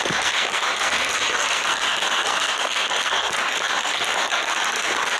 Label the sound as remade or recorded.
remade